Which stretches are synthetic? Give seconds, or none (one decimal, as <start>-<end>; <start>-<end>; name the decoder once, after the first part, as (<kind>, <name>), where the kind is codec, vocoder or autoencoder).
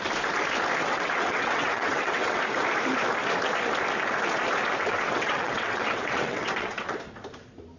0.8-2.4 (vocoder, WaveNeXt); 4.9-7.0